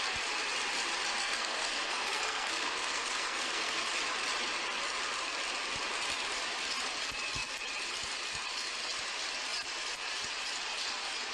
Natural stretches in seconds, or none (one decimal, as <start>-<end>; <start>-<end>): 0.0-1.2; 3.9-11.3